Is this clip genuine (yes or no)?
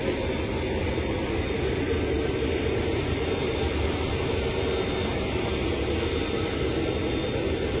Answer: yes